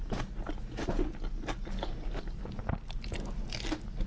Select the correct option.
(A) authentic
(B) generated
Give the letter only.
A